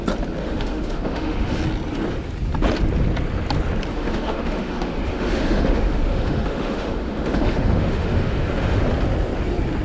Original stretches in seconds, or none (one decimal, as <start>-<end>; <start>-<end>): 0.0-0.4; 1.6-3.9; 8.8-9.8